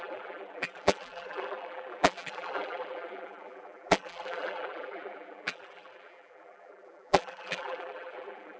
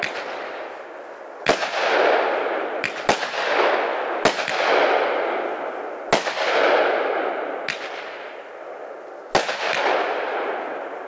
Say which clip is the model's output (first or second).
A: first